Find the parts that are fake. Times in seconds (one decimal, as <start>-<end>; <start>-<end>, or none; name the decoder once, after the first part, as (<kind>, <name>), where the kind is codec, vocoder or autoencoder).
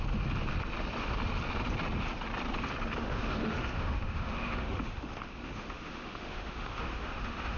3.0-7.6 (autoencoder, DAC-VAE)